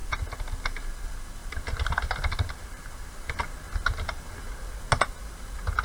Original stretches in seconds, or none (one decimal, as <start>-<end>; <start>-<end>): 0.0-1.4; 3.3-5.8